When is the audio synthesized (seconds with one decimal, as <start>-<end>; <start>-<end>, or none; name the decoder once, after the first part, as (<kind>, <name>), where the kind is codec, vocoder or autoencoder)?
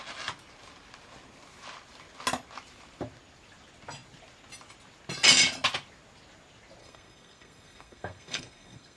6.8-9.0 (codec, SNAC)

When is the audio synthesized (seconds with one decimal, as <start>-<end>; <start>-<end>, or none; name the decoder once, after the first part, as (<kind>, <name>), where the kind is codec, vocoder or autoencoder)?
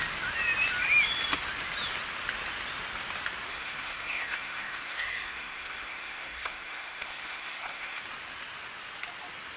3.5-8.0 (codec, SNAC)